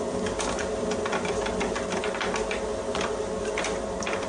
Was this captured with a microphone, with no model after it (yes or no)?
yes